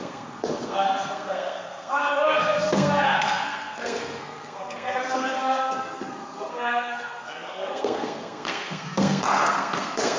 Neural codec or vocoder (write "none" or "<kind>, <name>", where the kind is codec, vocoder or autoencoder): codec, SNAC